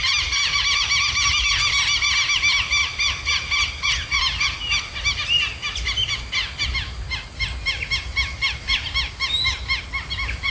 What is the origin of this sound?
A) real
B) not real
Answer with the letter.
A